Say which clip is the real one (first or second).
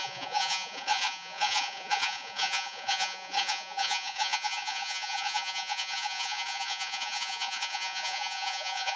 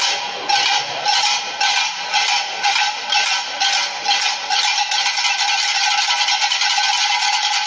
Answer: second